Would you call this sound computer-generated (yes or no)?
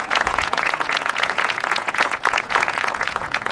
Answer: yes